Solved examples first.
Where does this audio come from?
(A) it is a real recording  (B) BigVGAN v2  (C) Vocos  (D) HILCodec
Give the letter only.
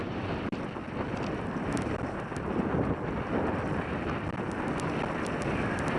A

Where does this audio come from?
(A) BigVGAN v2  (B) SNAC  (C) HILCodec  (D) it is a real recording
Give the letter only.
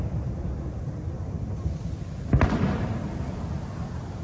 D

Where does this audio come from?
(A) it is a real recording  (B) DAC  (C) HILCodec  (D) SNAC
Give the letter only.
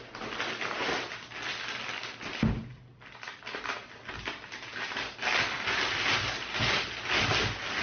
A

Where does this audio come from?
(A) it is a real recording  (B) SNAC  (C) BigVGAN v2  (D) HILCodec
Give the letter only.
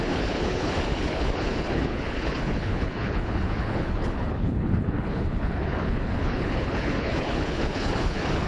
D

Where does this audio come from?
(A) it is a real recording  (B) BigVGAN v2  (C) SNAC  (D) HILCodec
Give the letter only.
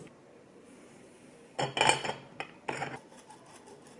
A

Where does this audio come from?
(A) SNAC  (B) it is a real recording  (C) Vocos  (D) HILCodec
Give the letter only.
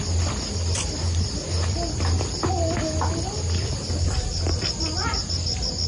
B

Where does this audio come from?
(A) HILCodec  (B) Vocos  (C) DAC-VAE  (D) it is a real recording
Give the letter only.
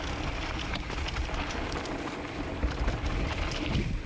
D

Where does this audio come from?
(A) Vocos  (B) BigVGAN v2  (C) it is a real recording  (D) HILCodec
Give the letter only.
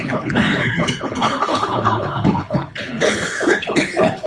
D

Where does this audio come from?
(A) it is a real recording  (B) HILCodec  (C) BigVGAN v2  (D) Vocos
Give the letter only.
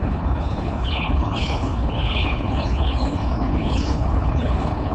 B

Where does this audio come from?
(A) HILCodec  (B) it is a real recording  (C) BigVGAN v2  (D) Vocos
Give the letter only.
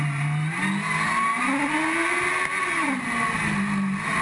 B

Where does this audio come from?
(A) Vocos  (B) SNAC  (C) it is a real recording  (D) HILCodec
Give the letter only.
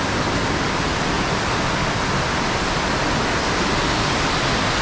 C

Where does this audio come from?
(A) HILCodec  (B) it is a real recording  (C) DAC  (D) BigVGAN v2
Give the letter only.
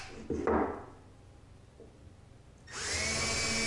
B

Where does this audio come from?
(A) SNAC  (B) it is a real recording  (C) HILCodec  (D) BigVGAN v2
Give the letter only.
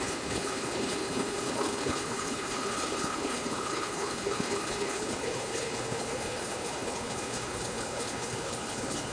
C